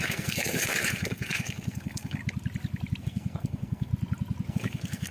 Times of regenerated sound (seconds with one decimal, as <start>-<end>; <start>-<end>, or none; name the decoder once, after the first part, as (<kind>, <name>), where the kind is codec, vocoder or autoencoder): 0.0-2.2 (codec, SNAC); 3.0-3.9; 4.5-5.1